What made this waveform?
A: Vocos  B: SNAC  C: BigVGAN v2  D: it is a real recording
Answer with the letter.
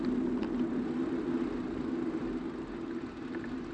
D